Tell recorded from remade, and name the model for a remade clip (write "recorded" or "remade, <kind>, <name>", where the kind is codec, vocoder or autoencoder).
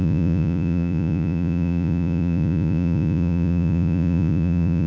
remade, vocoder, Vocos